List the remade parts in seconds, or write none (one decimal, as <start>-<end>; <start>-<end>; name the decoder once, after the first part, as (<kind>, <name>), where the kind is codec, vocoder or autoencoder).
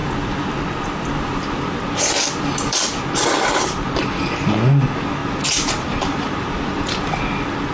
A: 5.2-7.2 (vocoder, BigVGAN v2)